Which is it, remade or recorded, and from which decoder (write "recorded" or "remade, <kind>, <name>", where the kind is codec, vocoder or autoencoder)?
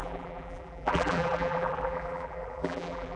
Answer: remade, vocoder, BigVGAN v2